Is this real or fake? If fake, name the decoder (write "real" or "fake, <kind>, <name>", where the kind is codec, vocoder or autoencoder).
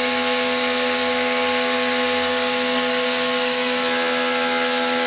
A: fake, codec, DAC